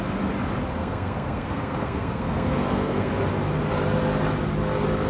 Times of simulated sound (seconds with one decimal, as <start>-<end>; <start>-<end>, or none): 0.8-3.1